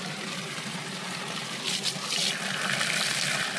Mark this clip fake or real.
real